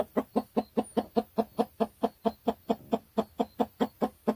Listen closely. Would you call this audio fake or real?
real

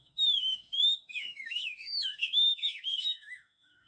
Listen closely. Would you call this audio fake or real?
fake